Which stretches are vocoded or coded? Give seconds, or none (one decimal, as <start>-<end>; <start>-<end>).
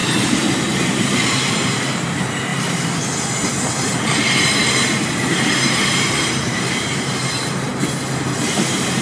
0.0-7.7; 8.5-9.0